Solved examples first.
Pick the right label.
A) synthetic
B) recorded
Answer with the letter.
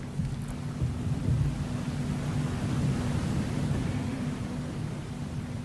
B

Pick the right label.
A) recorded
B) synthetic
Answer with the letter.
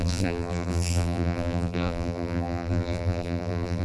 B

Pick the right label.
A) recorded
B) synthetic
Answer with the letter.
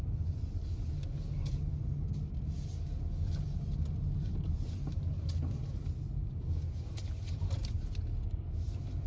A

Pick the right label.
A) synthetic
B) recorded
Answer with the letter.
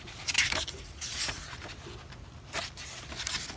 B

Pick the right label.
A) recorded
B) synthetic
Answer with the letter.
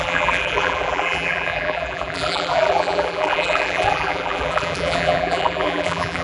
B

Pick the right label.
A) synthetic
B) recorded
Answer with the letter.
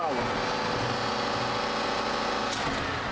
B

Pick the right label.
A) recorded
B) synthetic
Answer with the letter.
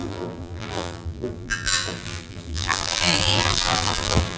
B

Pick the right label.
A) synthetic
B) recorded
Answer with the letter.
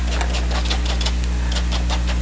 B